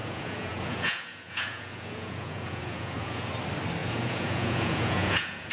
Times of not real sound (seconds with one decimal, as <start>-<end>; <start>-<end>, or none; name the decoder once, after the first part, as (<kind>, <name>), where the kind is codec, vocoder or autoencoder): 0.0-3.3 (vocoder, Vocos); 3.8-5.5